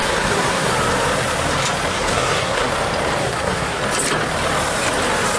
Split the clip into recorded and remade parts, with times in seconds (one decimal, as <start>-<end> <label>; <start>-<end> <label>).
0.0-0.7 remade; 0.7-1.9 recorded; 1.9-2.7 remade; 2.7-3.2 recorded; 3.2-3.8 remade; 3.8-5.4 recorded

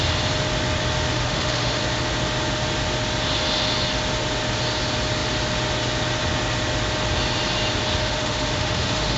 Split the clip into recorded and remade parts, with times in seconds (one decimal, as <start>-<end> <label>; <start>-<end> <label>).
0.0-1.1 recorded; 1.1-1.8 remade; 1.8-8.0 recorded; 8.0-9.2 remade

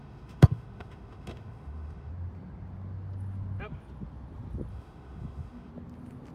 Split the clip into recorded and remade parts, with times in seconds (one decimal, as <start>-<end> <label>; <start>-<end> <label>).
0.0-2.1 remade; 2.1-4.7 recorded; 4.7-5.7 remade; 5.7-6.3 recorded

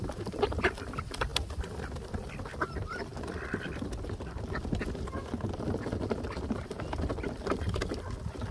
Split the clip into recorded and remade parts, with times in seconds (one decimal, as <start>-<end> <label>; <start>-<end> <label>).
0.0-1.3 remade; 1.3-2.7 recorded; 2.7-3.1 remade; 3.1-5.6 recorded; 5.6-8.5 remade

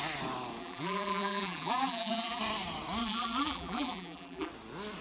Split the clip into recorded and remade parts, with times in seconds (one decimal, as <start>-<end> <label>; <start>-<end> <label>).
0.0-0.6 recorded; 0.6-2.4 remade; 2.4-3.0 recorded; 3.0-4.5 remade; 4.5-5.0 recorded